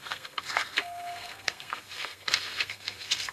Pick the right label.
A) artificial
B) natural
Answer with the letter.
A